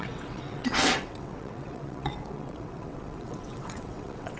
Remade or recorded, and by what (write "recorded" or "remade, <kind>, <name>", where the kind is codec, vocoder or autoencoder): remade, vocoder, WaveNeXt